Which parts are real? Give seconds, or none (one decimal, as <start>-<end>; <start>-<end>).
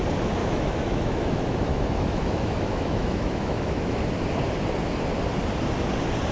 0.0-0.4; 4.2-6.3